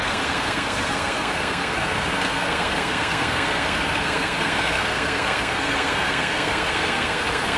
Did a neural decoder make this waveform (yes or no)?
yes